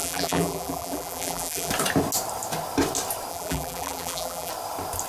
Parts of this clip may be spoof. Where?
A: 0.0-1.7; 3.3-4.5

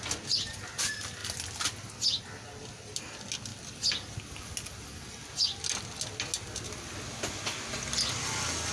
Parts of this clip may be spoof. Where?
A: none

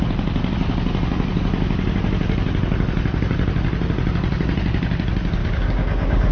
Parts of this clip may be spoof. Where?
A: 5.4-6.3